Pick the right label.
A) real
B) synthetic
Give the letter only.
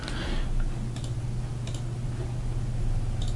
A